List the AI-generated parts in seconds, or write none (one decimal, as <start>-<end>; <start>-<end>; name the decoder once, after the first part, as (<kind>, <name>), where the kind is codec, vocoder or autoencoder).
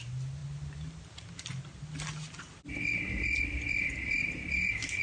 none